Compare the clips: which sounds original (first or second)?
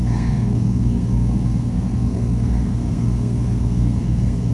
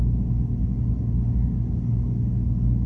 second